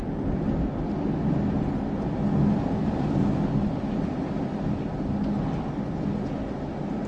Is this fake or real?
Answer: real